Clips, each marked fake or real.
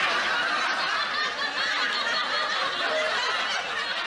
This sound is real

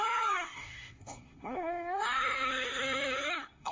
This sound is fake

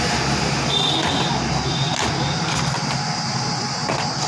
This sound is real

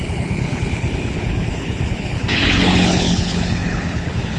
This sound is fake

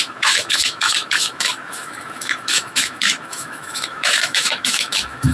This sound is fake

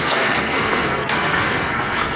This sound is fake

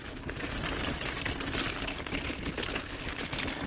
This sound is real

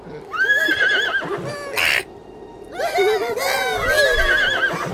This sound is real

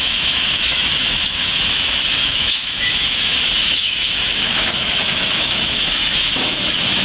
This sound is fake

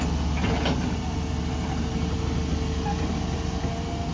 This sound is real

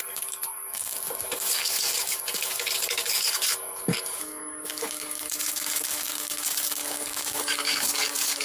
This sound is fake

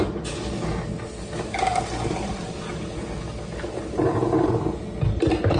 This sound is real